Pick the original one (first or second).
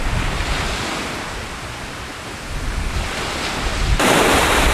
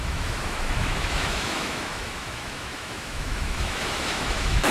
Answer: first